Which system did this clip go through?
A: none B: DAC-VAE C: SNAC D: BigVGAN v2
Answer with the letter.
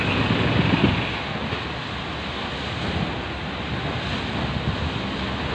A